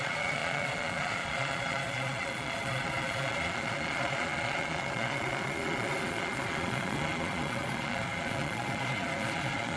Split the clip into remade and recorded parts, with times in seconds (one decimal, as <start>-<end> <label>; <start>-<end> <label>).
0.0-9.8 remade